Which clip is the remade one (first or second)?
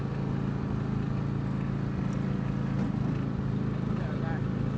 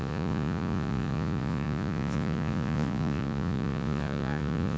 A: second